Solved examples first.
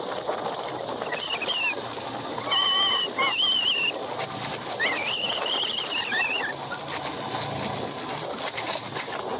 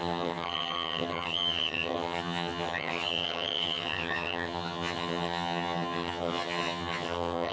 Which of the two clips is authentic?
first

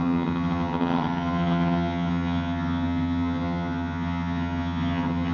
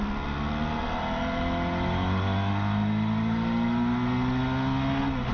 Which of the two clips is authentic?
second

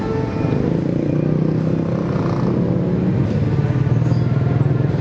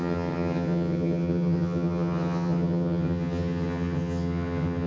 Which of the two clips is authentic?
first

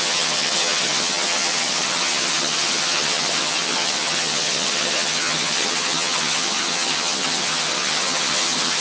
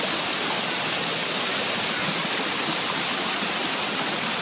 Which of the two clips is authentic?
second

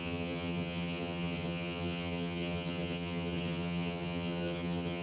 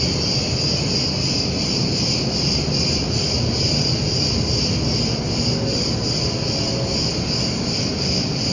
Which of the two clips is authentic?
second